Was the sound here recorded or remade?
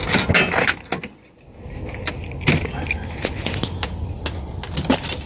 recorded